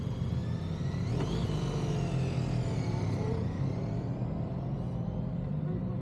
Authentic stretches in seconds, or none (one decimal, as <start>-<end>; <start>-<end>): 0.0-6.0